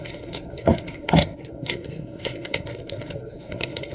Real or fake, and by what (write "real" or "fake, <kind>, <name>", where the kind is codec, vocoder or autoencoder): fake, codec, SNAC